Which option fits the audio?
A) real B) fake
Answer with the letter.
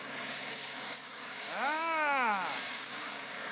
B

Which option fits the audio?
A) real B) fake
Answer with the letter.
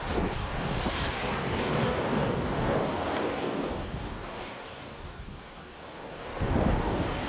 B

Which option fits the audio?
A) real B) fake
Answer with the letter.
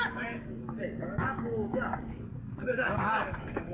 B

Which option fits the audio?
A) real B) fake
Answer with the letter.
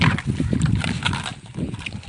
A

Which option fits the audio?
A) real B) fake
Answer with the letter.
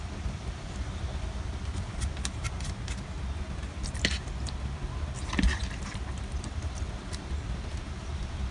A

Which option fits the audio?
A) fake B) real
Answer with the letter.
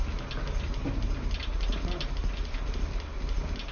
B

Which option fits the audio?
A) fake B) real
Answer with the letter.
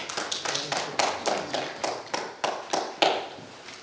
B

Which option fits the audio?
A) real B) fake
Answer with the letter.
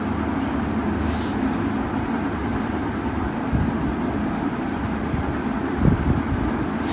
A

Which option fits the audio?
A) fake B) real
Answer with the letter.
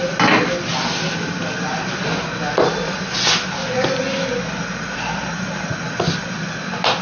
B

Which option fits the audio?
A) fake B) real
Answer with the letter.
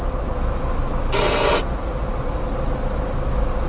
B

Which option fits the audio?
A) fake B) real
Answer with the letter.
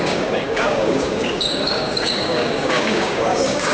A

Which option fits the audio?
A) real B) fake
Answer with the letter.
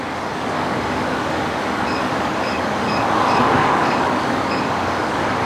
B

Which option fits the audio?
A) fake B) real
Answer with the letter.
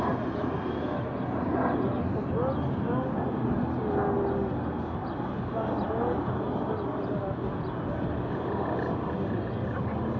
B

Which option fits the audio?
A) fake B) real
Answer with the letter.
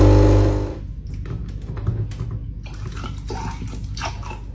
B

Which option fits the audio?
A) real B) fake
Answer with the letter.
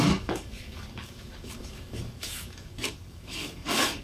B